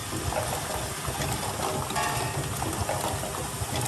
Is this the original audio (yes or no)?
yes